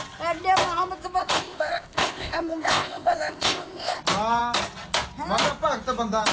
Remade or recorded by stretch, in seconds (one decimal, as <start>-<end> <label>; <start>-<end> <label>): 0.0-1.2 recorded; 1.2-4.0 remade; 4.0-6.3 recorded